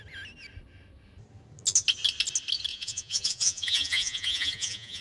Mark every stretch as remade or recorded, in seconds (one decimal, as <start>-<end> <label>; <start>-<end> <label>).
0.0-2.7 recorded; 2.7-5.0 remade